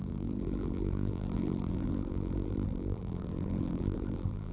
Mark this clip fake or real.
fake